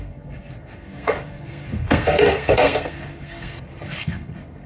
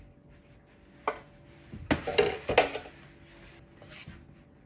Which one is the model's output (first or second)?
first